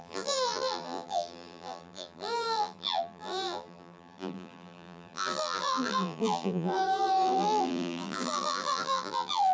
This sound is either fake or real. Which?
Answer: fake